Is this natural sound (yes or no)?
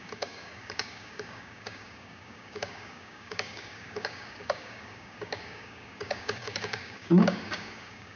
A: no